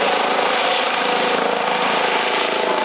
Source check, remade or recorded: recorded